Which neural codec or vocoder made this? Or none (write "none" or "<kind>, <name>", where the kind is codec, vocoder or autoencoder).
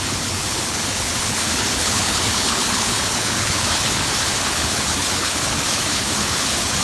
codec, HILCodec